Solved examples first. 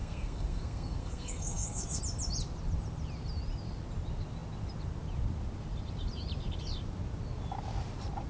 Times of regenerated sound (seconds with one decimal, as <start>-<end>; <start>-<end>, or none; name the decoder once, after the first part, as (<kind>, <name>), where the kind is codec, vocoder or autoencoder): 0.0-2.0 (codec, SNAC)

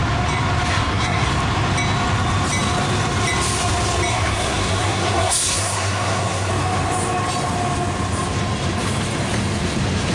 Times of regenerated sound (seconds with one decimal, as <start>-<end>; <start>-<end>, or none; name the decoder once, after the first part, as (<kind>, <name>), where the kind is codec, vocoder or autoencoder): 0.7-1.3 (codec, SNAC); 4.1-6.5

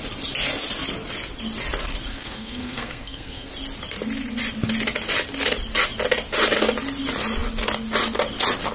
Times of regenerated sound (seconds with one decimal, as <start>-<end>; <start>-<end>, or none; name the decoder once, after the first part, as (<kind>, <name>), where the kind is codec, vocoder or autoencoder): 2.1-3.5 (codec, SNAC)

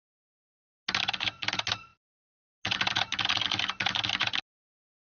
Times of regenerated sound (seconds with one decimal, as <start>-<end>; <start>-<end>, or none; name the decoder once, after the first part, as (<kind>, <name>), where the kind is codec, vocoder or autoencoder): none